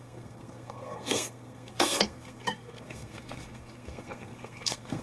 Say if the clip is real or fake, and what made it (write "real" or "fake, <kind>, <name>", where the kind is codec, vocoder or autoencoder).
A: fake, codec, SNAC